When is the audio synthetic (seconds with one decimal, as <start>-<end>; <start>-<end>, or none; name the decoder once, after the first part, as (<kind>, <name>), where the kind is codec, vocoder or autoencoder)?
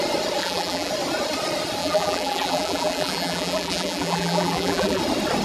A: 0.4-0.9 (vocoder, BigVGAN v2); 1.8-5.0